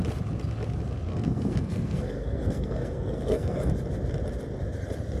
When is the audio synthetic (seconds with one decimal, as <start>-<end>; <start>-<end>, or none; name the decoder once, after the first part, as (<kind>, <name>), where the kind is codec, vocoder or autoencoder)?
1.1-3.7 (codec, SNAC)

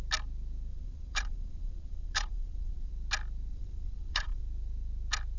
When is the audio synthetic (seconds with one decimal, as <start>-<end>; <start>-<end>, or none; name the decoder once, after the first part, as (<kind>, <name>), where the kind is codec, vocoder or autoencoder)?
0.7-2.9 (vocoder, Vocos); 3.5-4.4

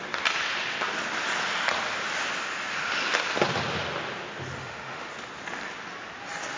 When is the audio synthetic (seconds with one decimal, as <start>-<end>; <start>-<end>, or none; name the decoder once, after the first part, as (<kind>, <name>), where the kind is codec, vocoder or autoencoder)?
4.6-5.1 (autoencoder, DAC-VAE)

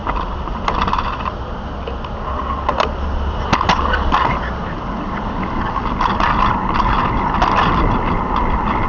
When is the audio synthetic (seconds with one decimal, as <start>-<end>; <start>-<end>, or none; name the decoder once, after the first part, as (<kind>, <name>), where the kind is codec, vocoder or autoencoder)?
none

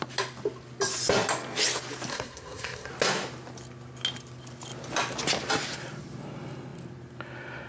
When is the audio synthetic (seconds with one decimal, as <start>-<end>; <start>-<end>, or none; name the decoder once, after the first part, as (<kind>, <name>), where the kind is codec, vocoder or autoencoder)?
2.1-2.9 (codec, SNAC)